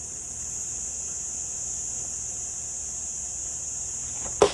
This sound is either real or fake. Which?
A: real